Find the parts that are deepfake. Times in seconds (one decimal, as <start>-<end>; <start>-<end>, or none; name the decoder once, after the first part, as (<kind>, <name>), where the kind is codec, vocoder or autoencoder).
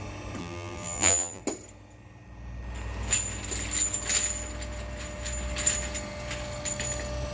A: 0.4-1.4 (vocoder, BigVGAN v2)